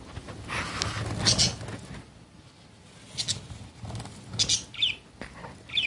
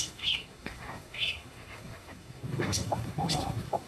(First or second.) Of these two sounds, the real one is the first